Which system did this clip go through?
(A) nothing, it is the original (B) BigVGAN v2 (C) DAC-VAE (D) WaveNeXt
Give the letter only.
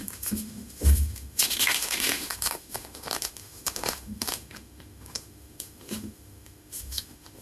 C